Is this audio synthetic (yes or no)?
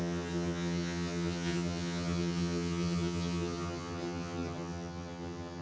yes